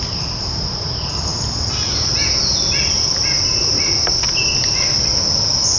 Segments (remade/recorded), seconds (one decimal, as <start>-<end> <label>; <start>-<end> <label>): 0.0-5.8 recorded